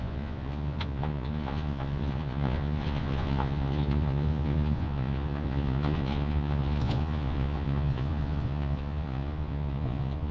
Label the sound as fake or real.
fake